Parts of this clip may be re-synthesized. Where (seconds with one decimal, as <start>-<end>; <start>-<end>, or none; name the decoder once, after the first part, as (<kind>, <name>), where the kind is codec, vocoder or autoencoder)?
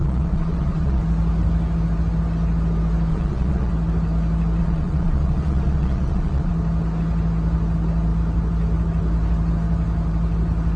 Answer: 0.0-1.0 (vocoder, Vocos); 3.1-3.7; 4.6-6.5